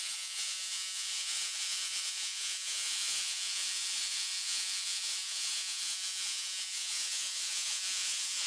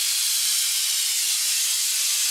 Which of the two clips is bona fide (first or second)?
second